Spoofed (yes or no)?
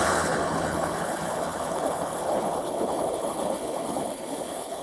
yes